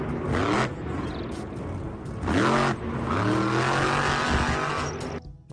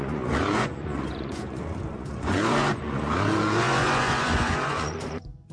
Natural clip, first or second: first